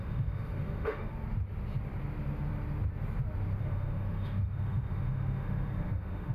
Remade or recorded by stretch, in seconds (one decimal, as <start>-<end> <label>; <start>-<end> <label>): 0.0-1.1 remade; 1.1-3.6 recorded; 3.6-6.3 remade